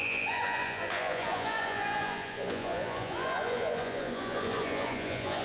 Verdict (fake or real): fake